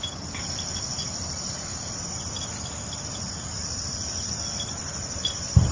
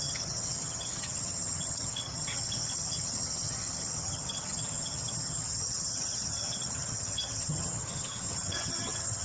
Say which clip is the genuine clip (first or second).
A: first